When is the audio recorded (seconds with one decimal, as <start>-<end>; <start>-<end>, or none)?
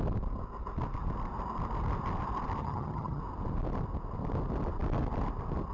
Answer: 0.0-2.6; 3.2-5.7